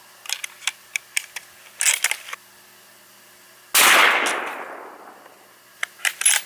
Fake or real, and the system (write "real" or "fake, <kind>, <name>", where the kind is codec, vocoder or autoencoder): real